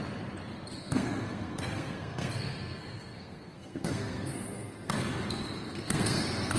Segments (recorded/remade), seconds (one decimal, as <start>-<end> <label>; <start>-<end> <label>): 0.0-0.8 recorded; 0.8-6.6 remade